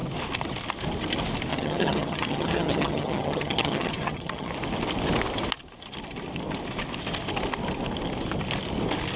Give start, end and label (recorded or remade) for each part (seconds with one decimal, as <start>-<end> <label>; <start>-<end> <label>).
0.0-1.5 recorded; 1.5-4.5 remade; 4.5-9.2 recorded